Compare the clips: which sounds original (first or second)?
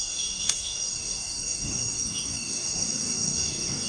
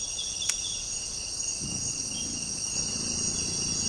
second